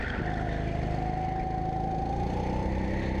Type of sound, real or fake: real